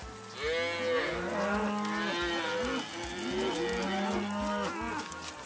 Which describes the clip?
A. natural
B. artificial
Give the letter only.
A